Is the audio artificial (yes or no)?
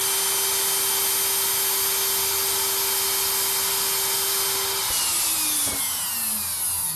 no